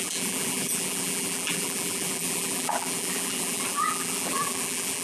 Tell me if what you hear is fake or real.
fake